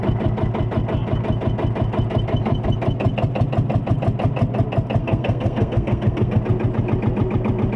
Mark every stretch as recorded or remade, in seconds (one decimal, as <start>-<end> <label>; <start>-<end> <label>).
0.0-5.0 recorded; 5.0-6.4 remade; 6.4-7.8 recorded